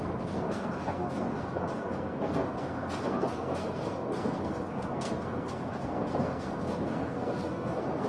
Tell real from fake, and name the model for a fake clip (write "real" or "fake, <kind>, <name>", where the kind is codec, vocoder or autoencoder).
fake, codec, SNAC